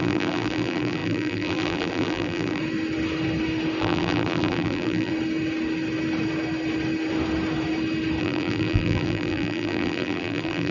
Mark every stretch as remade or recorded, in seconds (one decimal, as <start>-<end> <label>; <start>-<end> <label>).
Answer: 0.0-2.6 remade; 2.6-3.8 recorded; 3.8-5.1 remade; 5.1-8.2 recorded; 8.2-10.7 remade